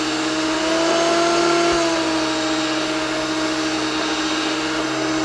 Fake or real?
real